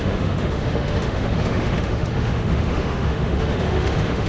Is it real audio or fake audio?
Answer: fake